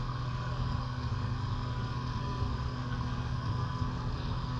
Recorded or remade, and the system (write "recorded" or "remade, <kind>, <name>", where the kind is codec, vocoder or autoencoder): remade, codec, SNAC